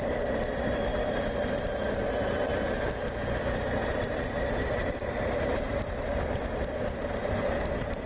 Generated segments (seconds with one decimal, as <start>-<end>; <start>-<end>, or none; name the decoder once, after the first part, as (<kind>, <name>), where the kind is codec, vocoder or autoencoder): 0.9-1.5 (vocoder, BigVGAN v2); 3.8-8.1